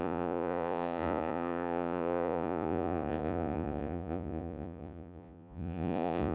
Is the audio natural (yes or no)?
no